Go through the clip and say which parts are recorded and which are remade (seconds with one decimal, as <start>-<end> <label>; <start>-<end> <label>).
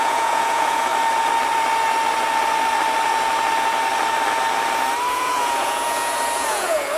0.0-0.9 remade; 0.9-5.1 recorded; 5.1-7.0 remade